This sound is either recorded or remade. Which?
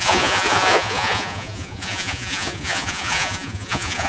remade